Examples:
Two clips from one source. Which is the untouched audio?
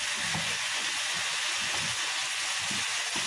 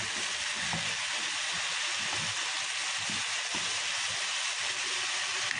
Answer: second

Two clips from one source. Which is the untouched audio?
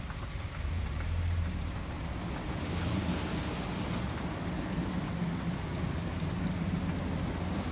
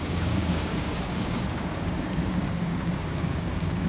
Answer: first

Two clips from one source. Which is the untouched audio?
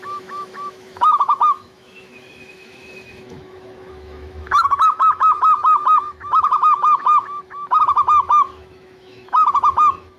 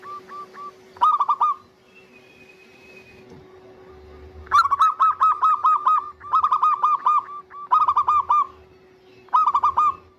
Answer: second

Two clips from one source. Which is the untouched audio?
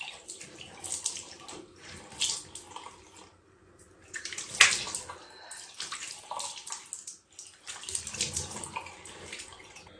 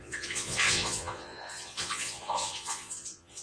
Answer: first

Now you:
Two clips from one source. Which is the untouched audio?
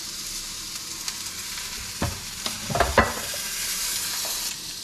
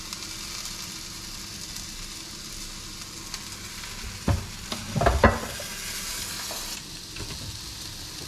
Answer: second